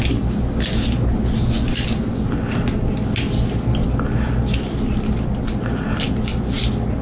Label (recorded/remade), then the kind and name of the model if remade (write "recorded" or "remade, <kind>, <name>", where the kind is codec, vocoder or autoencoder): recorded